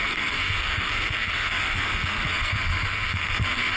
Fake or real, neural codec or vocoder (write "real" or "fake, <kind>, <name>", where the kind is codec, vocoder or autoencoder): fake, codec, SNAC